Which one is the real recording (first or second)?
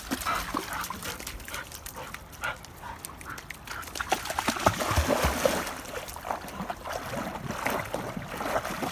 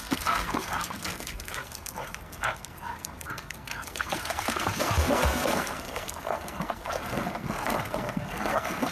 first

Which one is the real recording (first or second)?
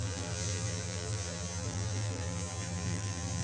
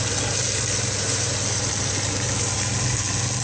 second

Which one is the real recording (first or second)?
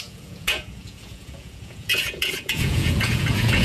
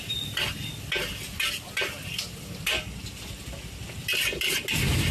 second